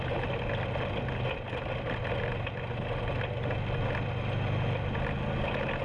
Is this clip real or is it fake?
real